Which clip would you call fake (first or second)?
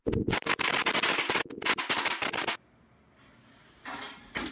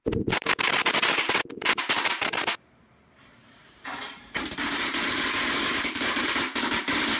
second